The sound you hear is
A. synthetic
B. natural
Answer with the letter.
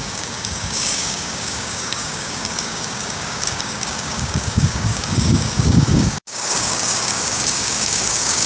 A